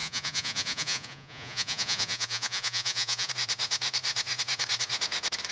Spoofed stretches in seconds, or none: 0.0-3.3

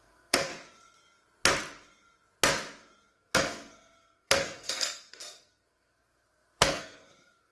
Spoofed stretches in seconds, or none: 0.0-0.5; 3.1-7.5